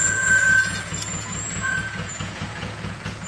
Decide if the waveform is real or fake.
fake